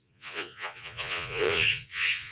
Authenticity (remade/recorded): remade